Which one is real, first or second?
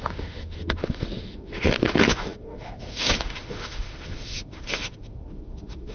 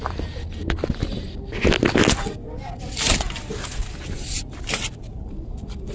second